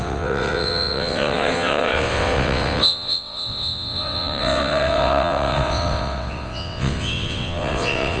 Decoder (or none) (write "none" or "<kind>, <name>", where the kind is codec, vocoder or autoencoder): vocoder, WaveNeXt